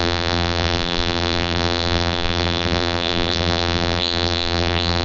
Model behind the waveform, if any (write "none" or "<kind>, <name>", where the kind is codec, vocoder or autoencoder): vocoder, BigVGAN v2